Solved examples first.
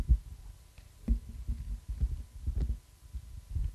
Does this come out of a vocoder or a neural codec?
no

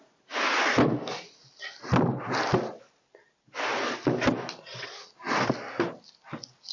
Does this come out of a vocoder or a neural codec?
no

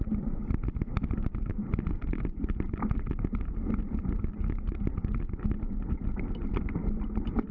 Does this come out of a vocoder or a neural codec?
no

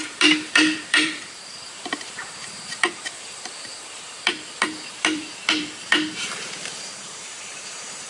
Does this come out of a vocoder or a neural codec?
yes